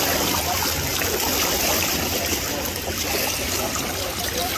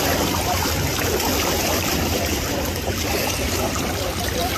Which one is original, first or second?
first